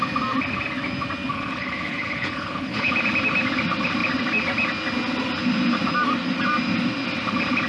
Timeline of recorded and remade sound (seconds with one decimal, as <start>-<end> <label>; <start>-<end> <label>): 0.0-1.3 recorded; 1.3-2.9 remade; 2.9-7.7 recorded